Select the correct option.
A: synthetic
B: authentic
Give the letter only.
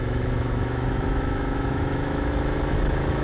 A